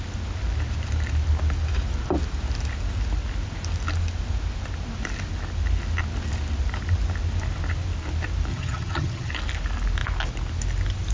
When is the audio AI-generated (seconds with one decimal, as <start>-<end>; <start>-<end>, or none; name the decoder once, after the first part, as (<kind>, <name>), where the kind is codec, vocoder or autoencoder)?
8.5-9.3 (vocoder, HiFi-GAN)